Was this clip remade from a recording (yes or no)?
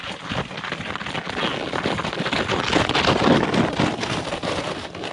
no